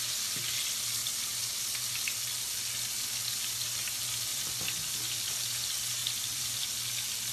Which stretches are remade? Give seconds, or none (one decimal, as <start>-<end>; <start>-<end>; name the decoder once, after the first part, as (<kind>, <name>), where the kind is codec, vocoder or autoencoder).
1.0-1.5 (vocoder, BigVGAN v2); 4.3-5.3; 6.0-6.6